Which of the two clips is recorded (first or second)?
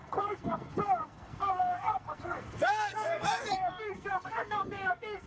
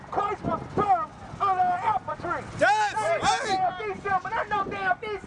second